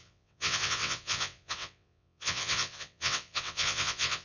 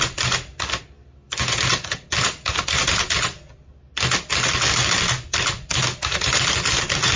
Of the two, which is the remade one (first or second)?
first